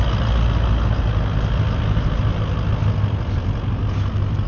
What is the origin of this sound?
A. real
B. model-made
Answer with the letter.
A